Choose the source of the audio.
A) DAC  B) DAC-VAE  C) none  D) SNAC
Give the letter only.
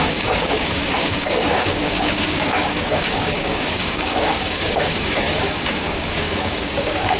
A